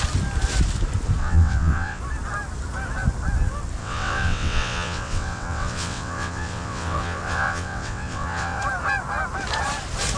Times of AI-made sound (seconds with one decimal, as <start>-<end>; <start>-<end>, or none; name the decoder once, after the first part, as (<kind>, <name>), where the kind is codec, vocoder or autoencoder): 1.2-2.0 (vocoder, WaveNeXt); 3.8-8.6